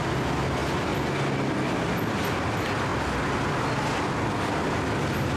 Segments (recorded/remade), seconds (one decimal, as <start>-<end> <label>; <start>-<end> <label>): 0.0-5.4 recorded